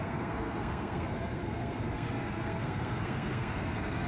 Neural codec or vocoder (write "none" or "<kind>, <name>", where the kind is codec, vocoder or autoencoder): codec, SNAC